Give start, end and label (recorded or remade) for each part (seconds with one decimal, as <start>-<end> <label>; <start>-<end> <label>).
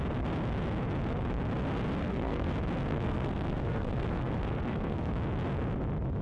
0.0-2.0 recorded; 2.0-2.5 remade; 2.5-2.9 recorded; 2.9-5.1 remade; 5.1-6.2 recorded